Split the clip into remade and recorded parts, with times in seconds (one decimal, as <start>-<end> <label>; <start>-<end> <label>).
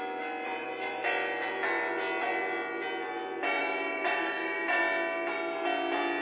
0.0-3.6 recorded; 3.6-4.8 remade; 4.8-6.2 recorded